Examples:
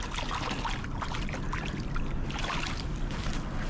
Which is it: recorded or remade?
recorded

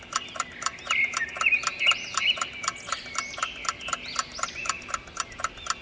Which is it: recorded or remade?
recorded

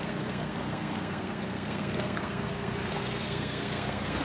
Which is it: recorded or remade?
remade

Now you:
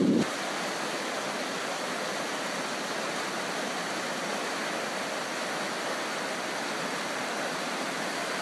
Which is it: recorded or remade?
recorded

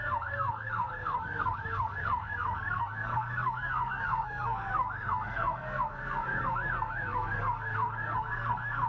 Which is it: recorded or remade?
remade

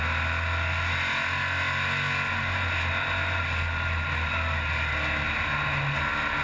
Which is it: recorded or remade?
recorded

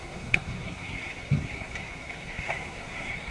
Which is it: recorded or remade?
remade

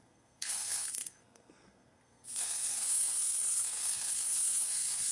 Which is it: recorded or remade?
remade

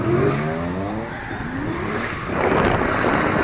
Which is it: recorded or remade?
recorded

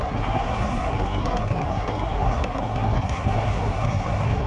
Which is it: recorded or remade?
remade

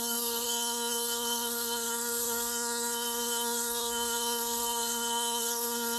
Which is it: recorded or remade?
remade